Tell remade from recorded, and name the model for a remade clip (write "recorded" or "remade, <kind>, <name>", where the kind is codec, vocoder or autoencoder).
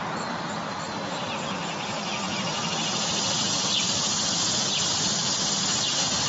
recorded